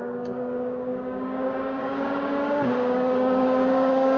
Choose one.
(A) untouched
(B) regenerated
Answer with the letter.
B